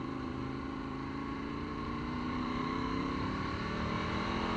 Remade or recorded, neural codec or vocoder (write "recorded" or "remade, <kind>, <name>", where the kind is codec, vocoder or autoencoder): remade, vocoder, BigVGAN v2